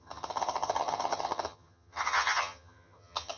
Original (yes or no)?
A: no